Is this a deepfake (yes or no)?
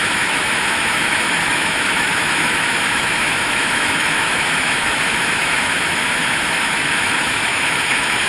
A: yes